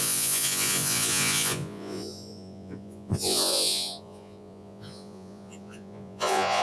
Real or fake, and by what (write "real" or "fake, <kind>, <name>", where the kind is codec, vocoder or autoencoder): fake, vocoder, Vocos